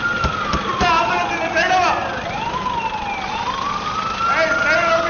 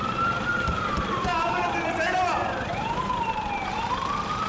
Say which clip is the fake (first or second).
second